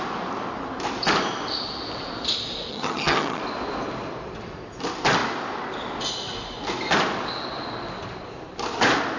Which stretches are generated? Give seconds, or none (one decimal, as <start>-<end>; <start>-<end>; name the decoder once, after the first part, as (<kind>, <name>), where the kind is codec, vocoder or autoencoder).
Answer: 2.7-3.4 (vocoder, HiFi-GAN)